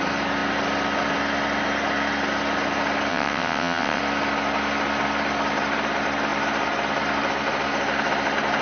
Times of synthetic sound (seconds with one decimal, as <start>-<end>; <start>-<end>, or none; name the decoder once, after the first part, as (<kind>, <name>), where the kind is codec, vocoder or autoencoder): 3.1-4.0 (vocoder, WaveNeXt)